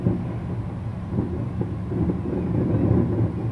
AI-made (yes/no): no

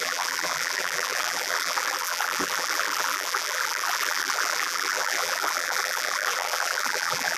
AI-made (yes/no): yes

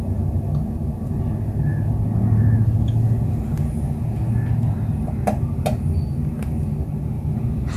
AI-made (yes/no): no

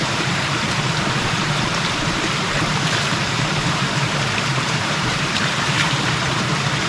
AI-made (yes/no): yes